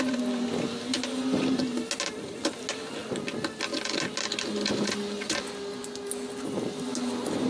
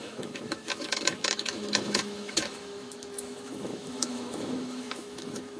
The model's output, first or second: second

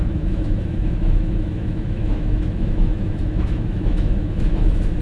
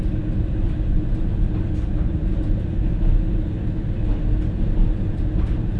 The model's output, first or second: first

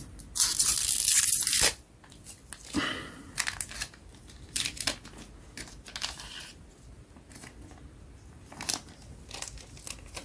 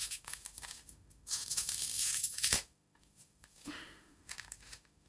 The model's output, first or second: second